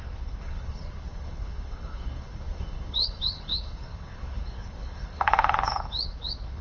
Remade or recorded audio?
remade